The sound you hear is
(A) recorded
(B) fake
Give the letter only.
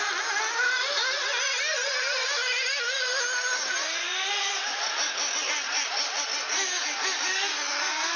A